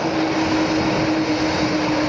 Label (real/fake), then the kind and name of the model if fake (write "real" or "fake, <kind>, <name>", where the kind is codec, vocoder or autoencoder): real